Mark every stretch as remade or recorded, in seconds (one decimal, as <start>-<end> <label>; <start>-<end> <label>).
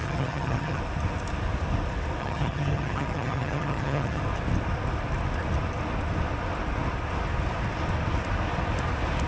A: 0.0-0.8 remade; 0.8-2.2 recorded; 2.2-4.2 remade; 4.2-9.3 recorded